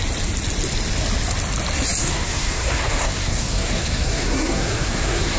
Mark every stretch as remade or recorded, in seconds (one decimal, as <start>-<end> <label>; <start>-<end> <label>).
0.0-2.0 recorded; 2.0-5.4 remade